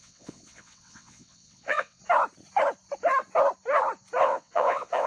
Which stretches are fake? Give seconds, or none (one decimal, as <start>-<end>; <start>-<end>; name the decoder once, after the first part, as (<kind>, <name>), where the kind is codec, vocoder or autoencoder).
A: 0.0-2.0 (vocoder, WaveNeXt); 4.2-5.1